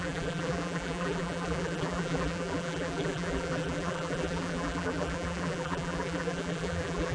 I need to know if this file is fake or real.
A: fake